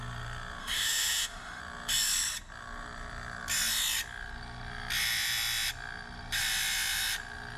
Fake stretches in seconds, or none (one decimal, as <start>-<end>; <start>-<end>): 0.6-1.6